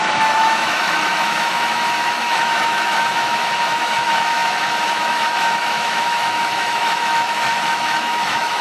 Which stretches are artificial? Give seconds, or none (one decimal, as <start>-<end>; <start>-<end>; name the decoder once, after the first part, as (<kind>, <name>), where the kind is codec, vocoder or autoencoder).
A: 0.0-8.6 (autoencoder, DAC-VAE)